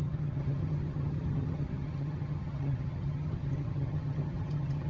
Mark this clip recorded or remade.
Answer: remade